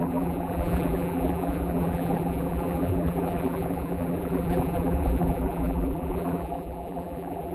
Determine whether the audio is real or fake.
fake